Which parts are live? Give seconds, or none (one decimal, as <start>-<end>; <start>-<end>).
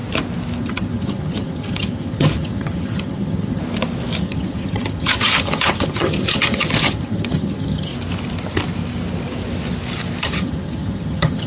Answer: 0.0-0.6; 3.6-4.2; 7.9-10.2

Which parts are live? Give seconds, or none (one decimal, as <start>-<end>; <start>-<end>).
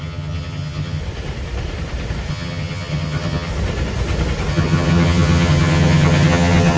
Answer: 1.0-2.3; 3.5-4.5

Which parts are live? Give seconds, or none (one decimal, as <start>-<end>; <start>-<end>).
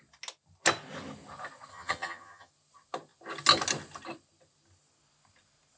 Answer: 0.0-1.7; 2.5-5.8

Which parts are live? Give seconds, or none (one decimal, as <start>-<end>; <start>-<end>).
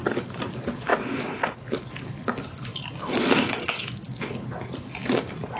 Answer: 0.0-5.6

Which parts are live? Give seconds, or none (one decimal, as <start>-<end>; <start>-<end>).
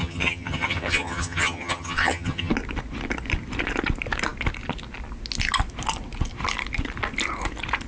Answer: 2.5-7.9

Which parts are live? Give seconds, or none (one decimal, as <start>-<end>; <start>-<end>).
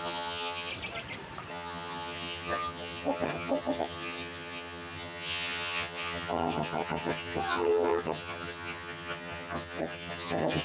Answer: 0.7-1.5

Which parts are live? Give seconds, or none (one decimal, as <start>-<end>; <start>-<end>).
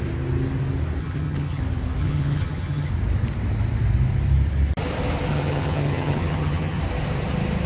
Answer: 0.0-1.0; 1.6-2.0; 2.9-5.3; 6.8-7.7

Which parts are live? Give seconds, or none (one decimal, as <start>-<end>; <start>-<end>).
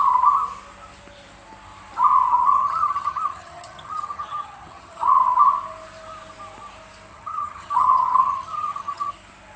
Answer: 0.0-2.3; 5.1-7.1; 9.1-9.6